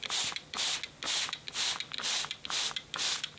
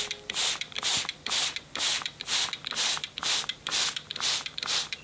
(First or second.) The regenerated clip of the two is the second